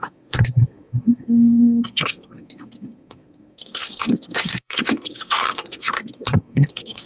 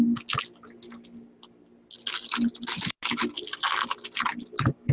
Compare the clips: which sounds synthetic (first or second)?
first